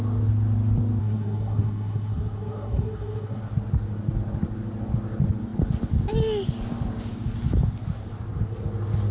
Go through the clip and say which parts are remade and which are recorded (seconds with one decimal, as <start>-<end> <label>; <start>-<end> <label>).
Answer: 0.0-1.0 recorded; 1.0-3.4 remade; 3.4-9.1 recorded